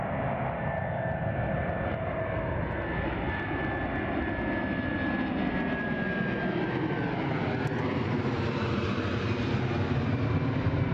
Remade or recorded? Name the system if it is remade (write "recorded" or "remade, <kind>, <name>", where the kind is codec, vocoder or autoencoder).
recorded